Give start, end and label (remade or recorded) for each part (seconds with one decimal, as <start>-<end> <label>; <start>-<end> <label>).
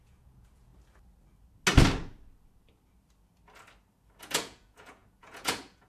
0.0-0.7 remade; 0.7-4.2 recorded; 4.2-5.9 remade